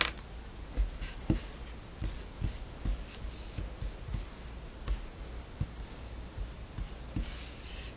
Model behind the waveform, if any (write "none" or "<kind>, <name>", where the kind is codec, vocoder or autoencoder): none